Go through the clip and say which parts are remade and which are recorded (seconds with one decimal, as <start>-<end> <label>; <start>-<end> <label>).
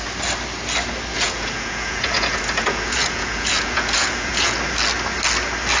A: 0.0-1.1 recorded; 1.1-4.6 remade; 4.6-5.8 recorded